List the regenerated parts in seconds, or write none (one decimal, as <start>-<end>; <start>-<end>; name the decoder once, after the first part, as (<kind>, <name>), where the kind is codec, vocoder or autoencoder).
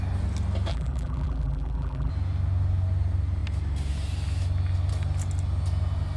0.7-2.1 (vocoder, BigVGAN v2)